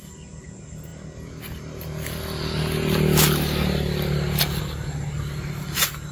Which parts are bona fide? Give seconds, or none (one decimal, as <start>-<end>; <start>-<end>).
0.0-6.1